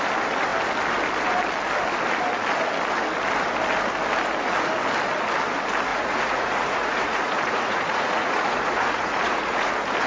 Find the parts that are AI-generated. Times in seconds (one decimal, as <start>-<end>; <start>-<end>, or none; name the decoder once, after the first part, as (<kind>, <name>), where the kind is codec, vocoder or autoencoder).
5.9-9.7 (vocoder, Vocos)